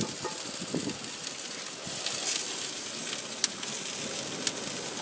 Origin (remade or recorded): recorded